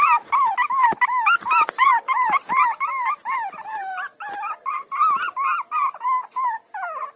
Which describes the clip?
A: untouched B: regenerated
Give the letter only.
B